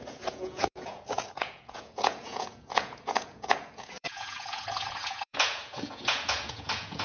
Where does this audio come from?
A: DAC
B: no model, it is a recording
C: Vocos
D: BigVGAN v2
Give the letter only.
C